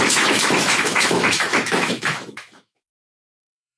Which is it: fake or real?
fake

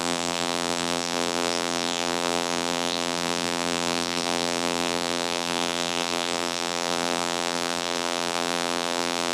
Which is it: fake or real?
fake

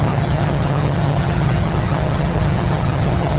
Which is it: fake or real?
fake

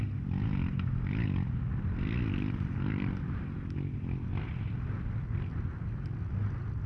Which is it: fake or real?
real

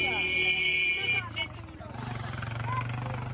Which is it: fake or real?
real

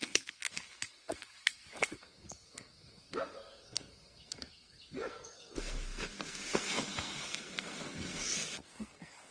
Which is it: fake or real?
fake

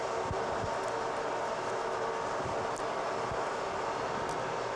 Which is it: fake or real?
real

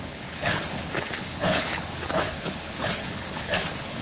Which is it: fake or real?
fake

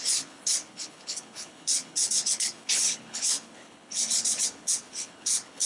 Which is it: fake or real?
fake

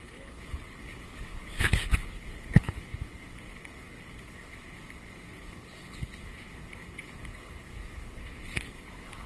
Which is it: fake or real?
fake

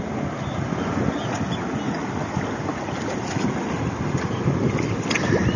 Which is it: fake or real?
real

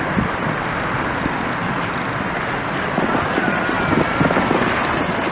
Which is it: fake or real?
fake